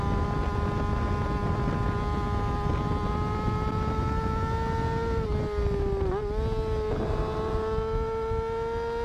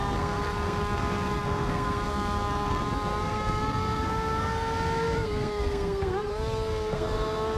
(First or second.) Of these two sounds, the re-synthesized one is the second